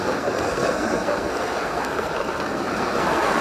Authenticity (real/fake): fake